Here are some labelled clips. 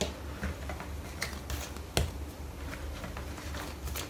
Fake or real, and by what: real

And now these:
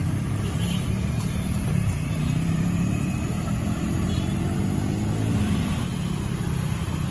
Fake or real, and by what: fake, vocoder, BigVGAN v2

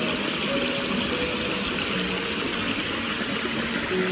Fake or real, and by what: real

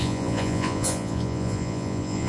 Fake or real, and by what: fake, vocoder, Vocos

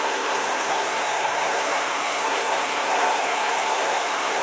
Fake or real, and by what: fake, codec, SNAC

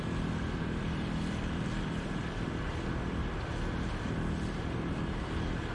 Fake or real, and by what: fake, vocoder, BigVGAN v2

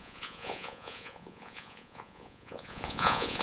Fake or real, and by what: fake, vocoder, Vocos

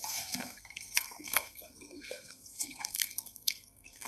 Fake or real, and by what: fake, codec, SNAC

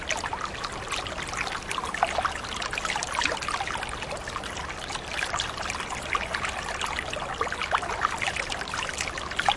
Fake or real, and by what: real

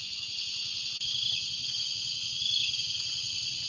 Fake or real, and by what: fake, vocoder, WaveNeXt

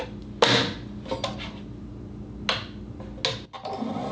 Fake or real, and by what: real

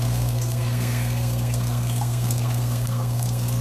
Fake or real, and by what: fake, codec, SNAC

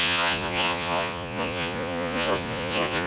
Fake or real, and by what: fake, vocoder, Vocos